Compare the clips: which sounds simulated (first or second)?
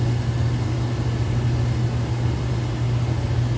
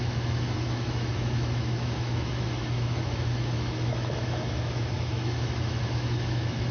second